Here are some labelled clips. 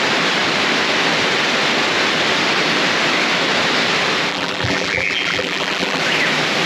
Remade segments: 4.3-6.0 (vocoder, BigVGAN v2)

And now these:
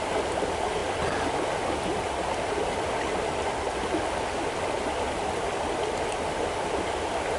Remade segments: none

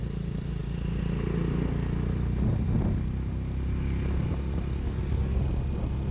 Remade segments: 4.8-5.4 (codec, SNAC)

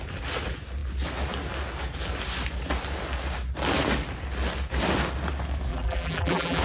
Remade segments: 5.7-6.6 (vocoder, BigVGAN v2)

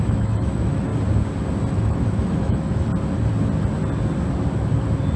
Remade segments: 0.0-0.9 (autoencoder, DAC-VAE); 1.7-2.9

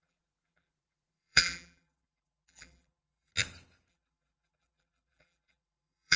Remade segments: 0.0-3.3 (vocoder, BigVGAN v2); 3.9-6.2

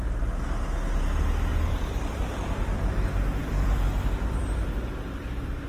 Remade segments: 1.5-2.6 (vocoder, BigVGAN v2); 3.4-4.4

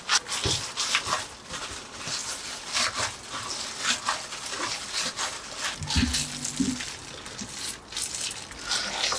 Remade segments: none